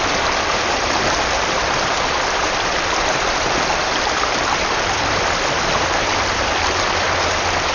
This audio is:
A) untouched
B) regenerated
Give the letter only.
B